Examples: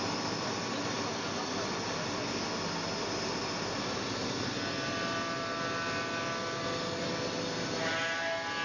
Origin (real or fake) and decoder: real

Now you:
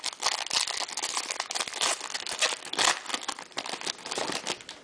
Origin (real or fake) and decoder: real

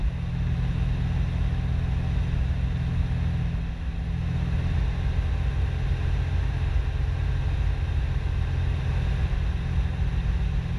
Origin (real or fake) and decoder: real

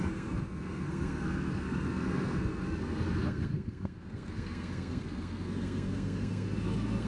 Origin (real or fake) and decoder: fake, codec, SNAC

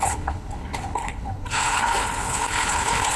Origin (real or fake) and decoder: fake, codec, HILCodec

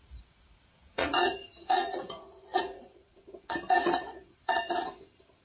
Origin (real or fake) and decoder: fake, vocoder, Vocos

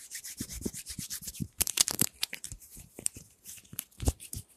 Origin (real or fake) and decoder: fake, vocoder, BigVGAN v2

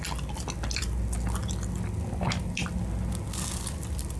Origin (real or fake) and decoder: real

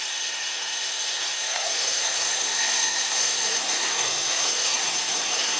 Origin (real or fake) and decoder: fake, codec, SNAC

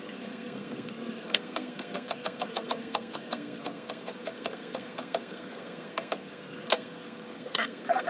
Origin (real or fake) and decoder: fake, codec, SNAC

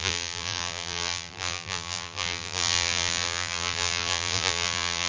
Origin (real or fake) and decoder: fake, vocoder, BigVGAN v2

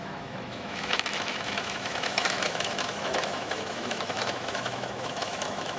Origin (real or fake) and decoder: fake, autoencoder, DAC-VAE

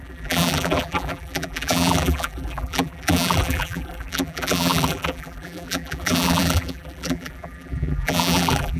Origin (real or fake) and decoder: fake, vocoder, BigVGAN v2